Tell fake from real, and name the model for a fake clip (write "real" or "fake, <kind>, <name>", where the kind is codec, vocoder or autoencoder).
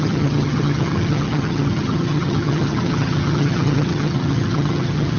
fake, vocoder, HiFi-GAN